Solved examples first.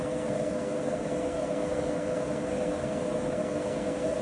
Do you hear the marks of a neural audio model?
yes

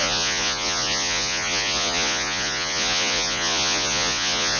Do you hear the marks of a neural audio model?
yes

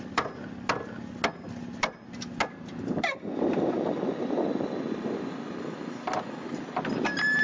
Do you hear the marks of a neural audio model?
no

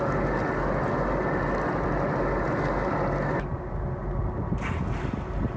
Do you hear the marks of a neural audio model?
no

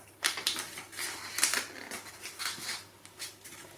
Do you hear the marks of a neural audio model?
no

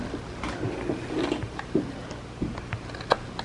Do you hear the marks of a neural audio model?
no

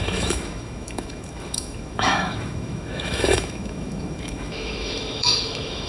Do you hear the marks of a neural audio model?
yes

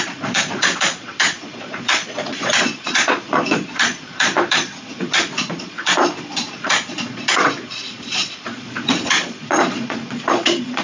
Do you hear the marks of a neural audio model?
yes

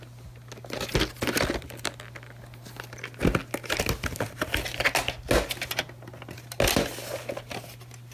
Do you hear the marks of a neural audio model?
no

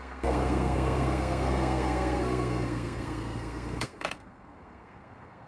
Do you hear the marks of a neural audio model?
yes